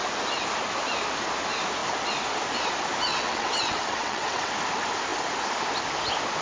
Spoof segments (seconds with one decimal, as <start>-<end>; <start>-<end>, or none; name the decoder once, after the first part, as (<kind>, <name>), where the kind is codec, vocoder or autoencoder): 3.1-4.5 (vocoder, WaveNeXt)